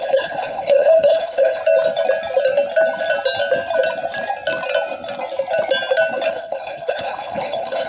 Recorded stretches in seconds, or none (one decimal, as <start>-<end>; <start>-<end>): 1.6-6.3